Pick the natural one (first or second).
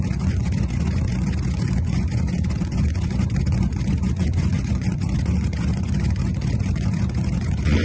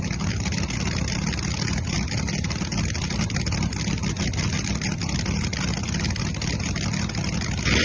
second